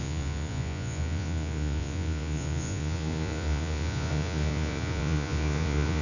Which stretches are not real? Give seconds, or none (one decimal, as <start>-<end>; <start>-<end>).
0.0-6.0